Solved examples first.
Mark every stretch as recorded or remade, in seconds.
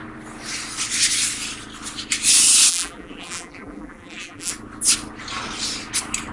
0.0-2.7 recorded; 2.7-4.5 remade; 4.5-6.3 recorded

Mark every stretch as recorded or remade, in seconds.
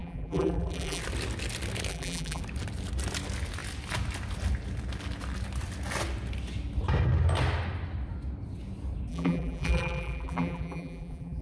0.0-1.0 remade; 1.0-1.9 recorded; 1.9-2.4 remade; 2.4-9.1 recorded; 9.1-11.4 remade